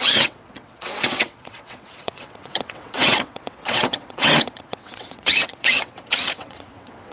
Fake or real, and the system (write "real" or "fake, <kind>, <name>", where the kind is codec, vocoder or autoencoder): fake, vocoder, WaveNeXt